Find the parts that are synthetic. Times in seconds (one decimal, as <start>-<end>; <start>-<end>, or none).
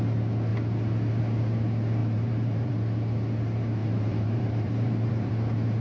2.0-2.7; 3.8-5.3